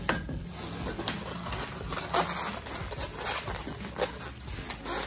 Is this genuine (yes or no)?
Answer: yes